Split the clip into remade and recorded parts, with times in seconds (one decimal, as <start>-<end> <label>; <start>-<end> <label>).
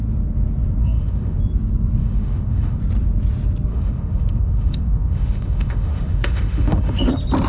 0.0-0.8 recorded; 0.8-1.4 remade; 1.4-2.0 recorded; 2.0-2.8 remade; 2.8-3.7 recorded; 3.7-7.1 remade; 7.1-7.5 recorded